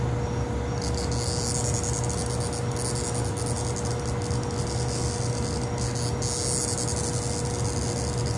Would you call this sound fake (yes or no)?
no